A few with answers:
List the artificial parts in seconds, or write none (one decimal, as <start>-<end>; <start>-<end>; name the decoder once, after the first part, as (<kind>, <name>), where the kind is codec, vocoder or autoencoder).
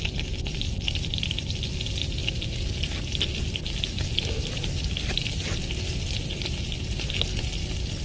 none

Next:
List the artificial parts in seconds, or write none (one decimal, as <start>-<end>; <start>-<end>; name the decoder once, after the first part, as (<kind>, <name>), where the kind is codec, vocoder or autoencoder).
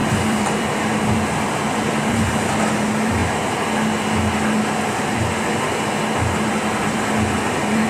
0.0-3.2 (vocoder, BigVGAN v2); 6.8-7.9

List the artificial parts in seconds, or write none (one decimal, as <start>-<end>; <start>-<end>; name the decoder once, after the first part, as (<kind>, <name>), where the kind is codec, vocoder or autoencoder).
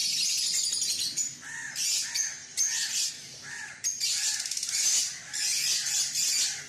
none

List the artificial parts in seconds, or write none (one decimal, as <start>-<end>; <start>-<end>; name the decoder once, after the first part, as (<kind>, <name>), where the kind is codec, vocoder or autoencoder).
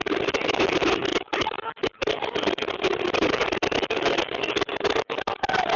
none